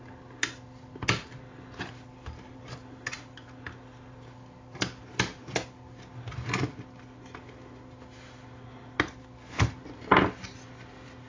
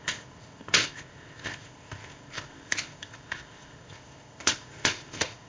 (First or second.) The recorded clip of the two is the first